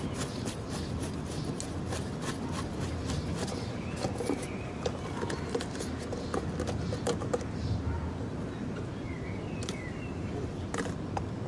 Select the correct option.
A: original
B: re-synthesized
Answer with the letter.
A